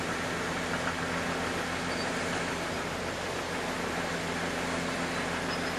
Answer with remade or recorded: recorded